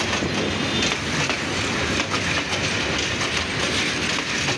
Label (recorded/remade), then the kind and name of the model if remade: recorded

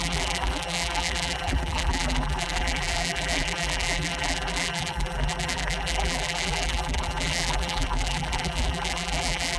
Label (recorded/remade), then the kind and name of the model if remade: remade, vocoder, BigVGAN v2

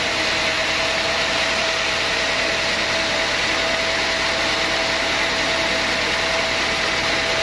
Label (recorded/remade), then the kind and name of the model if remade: recorded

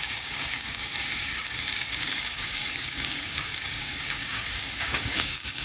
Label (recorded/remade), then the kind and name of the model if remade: remade, codec, DAC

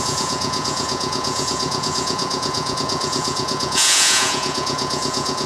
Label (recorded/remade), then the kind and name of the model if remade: remade, vocoder, Vocos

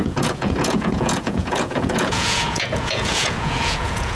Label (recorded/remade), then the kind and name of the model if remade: remade, vocoder, Vocos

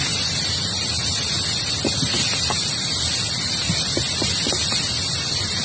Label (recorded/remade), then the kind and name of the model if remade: recorded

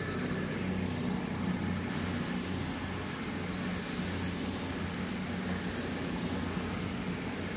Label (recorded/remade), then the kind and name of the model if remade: recorded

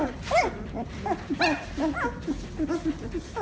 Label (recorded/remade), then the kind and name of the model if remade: recorded